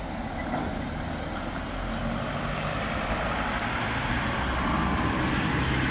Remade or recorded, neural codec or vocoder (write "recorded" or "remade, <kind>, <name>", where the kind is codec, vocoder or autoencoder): recorded